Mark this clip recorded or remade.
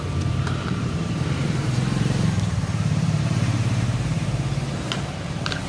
remade